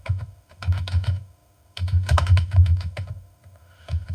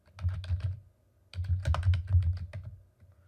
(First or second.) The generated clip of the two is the first